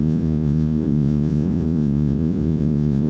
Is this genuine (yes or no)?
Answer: no